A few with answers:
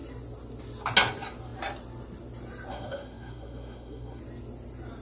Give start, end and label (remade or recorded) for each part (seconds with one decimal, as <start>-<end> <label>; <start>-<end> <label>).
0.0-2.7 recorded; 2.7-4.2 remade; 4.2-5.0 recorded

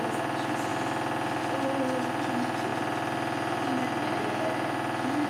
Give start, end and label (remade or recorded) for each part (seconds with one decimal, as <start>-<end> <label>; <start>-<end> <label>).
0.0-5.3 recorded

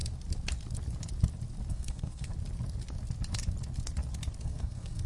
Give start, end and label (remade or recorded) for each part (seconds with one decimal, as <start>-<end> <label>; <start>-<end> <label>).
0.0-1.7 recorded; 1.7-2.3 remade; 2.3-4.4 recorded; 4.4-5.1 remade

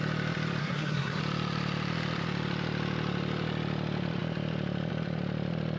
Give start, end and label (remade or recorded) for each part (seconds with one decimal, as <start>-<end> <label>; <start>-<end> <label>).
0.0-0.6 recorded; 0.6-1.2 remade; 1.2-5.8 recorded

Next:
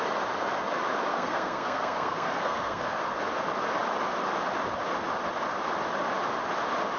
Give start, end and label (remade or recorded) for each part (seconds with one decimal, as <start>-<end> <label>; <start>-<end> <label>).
0.0-1.1 recorded; 1.1-3.0 remade; 3.0-7.0 recorded

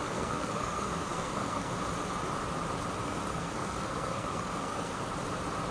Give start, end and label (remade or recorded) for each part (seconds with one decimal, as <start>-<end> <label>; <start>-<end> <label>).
0.0-1.7 remade; 1.7-3.0 recorded; 3.0-5.0 remade; 5.0-5.7 recorded